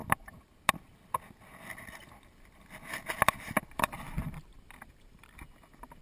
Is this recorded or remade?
recorded